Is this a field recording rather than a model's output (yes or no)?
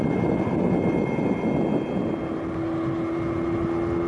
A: yes